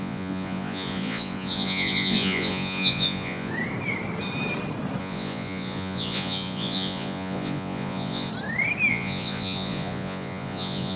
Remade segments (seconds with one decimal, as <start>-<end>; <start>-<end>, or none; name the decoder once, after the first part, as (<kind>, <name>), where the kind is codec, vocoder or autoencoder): 0.0-3.5 (vocoder, Vocos); 5.0-8.3; 8.9-11.0